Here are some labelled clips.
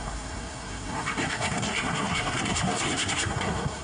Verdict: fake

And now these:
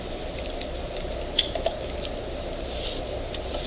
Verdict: real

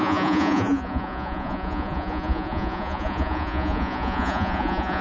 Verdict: fake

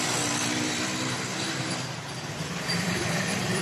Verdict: fake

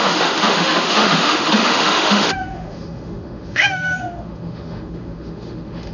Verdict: fake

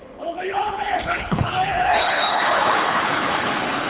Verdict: fake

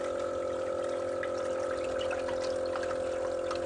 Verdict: real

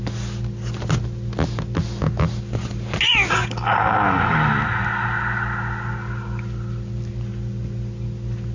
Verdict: real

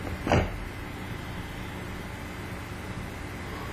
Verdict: real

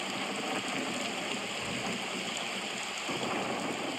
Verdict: real